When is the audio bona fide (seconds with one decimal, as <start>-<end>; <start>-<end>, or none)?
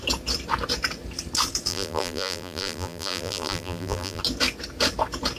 0.0-1.7; 4.2-5.4